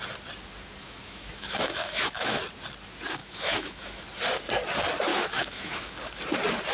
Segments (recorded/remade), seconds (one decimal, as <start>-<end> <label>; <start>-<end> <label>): 0.0-0.8 recorded; 0.8-2.4 remade; 2.4-3.2 recorded; 3.2-4.0 remade; 4.0-5.1 recorded; 5.1-5.9 remade; 5.9-6.7 recorded